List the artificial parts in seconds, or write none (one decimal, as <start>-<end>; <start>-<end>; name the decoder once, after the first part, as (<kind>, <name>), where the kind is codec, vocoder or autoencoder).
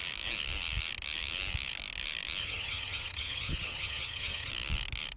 2.4-4.5 (vocoder, HiFi-GAN)